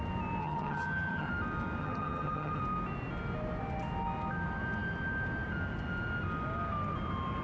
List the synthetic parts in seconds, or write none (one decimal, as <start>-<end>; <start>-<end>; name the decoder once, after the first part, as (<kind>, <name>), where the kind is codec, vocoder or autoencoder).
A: 0.4-1.3 (vocoder, HiFi-GAN); 1.8-2.6